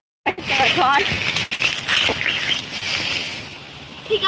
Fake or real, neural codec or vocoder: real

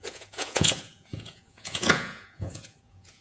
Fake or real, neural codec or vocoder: fake, vocoder, Vocos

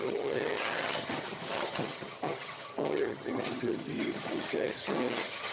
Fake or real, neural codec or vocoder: fake, vocoder, HiFi-GAN